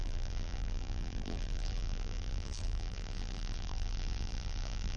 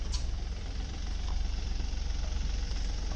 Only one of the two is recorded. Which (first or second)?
second